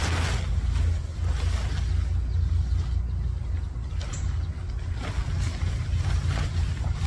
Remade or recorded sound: recorded